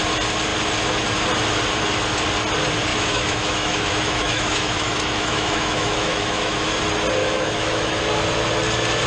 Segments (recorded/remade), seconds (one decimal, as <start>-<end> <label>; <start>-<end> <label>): 0.0-2.9 recorded; 2.9-6.7 remade; 6.7-7.2 recorded; 7.2-8.0 remade; 8.0-9.1 recorded